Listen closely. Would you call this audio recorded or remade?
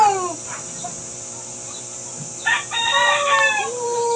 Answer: recorded